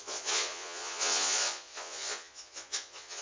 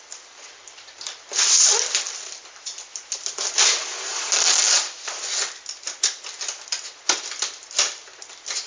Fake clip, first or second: first